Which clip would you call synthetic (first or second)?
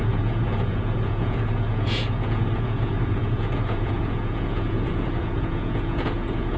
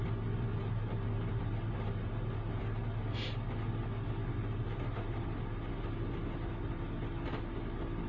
first